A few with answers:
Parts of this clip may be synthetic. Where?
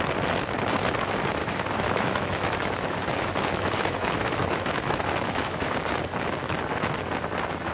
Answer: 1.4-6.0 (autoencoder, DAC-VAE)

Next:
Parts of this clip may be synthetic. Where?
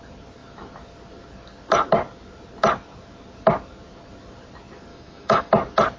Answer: 4.9-5.5 (autoencoder, DAC-VAE)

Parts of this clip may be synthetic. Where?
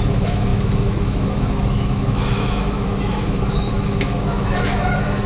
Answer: 0.0-5.3 (autoencoder, DAC-VAE)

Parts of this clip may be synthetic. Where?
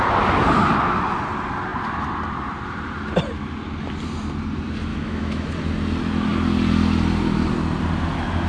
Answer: 4.9-5.5 (autoencoder, DAC-VAE)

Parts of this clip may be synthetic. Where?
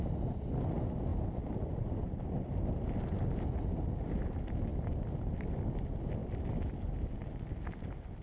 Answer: none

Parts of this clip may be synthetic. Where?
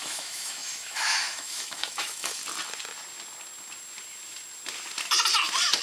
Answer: 0.0-2.4 (autoencoder, DAC-VAE)